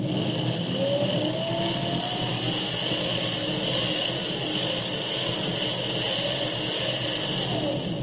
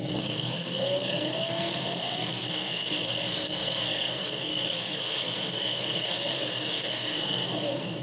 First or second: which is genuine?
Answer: first